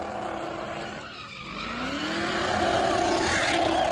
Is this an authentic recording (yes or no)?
yes